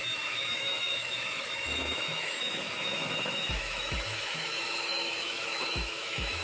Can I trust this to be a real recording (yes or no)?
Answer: no